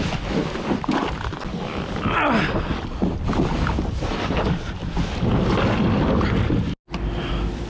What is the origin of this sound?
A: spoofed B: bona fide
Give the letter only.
B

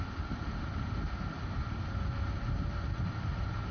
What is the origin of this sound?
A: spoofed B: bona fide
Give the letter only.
B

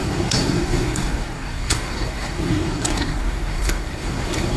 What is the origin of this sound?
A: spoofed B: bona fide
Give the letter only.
A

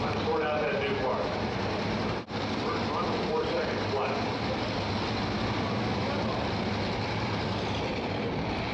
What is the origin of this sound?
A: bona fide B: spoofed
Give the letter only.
A